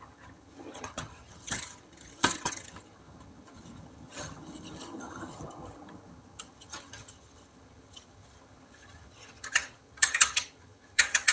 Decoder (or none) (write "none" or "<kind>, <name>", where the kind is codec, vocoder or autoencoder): vocoder, HiFi-GAN